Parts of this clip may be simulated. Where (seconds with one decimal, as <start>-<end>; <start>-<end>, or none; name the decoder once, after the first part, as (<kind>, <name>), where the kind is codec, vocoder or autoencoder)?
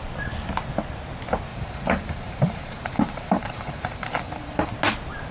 1.5-4.7 (vocoder, BigVGAN v2)